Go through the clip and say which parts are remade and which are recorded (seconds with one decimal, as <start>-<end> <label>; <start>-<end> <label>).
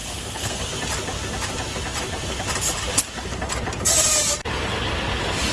0.0-0.6 remade; 0.6-5.5 recorded